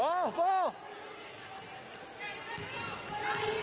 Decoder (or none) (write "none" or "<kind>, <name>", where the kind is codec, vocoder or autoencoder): none